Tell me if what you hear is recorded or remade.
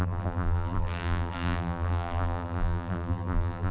remade